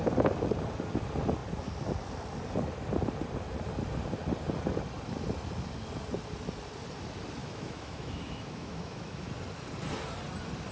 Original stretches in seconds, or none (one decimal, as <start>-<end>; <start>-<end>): 0.0-7.4; 9.3-10.7